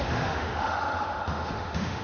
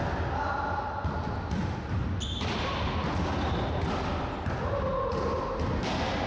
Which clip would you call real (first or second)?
second